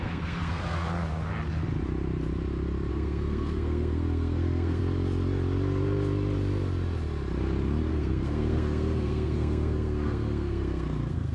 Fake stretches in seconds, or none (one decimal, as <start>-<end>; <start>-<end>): 0.0-0.8; 2.9-4.8; 7.9-11.3